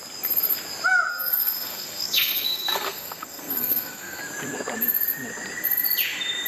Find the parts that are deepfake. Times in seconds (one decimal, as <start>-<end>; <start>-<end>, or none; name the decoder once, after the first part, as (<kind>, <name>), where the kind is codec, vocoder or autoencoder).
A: 1.1-4.2 (codec, SNAC)